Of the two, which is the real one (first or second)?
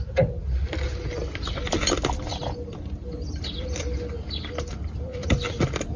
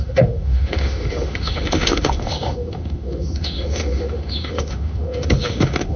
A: first